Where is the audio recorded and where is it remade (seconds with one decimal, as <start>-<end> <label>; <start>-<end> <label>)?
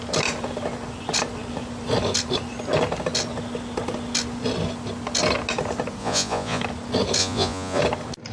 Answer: 0.0-6.0 recorded; 6.0-6.6 remade; 6.6-7.2 recorded; 7.2-7.8 remade; 7.8-8.3 recorded